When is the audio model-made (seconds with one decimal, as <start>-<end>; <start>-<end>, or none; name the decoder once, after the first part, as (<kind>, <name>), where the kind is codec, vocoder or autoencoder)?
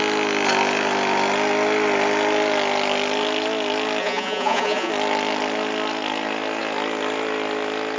4.0-4.9 (vocoder, Vocos)